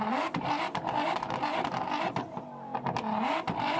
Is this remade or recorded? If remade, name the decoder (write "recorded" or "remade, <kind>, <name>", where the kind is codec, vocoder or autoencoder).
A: recorded